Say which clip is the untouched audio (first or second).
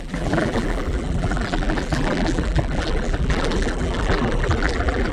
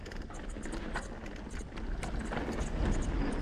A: second